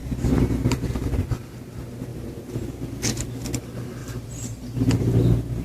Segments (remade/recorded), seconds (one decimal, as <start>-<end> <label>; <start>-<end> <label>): 0.0-0.9 remade; 0.9-4.0 recorded; 4.0-5.0 remade; 5.0-5.6 recorded